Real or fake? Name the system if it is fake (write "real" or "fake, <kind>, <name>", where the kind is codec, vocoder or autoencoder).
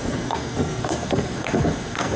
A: fake, codec, SNAC